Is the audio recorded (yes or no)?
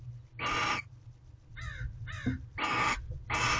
yes